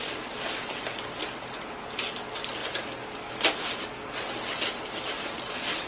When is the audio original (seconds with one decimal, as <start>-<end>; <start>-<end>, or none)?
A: 0.0-5.9